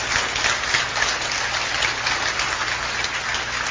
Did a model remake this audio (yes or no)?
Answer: no